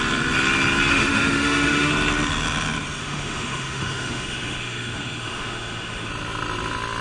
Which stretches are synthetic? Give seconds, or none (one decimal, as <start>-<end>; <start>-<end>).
0.9-1.9; 3.0-6.1